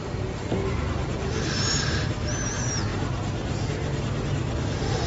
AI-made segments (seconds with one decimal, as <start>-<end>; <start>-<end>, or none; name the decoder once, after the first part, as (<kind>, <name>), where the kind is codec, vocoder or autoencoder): none